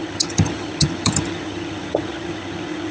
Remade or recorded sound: remade